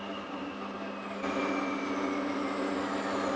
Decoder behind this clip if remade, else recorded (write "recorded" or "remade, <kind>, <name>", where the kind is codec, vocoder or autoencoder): recorded